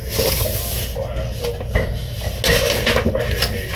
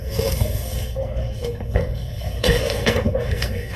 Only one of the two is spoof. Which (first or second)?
second